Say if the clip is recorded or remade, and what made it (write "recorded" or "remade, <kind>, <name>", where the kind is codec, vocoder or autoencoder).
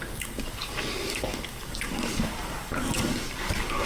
remade, codec, DAC